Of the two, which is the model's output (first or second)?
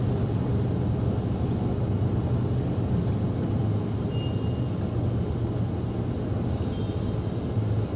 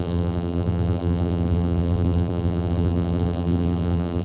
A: second